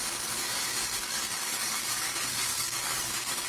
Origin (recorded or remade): remade